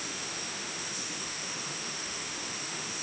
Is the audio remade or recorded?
remade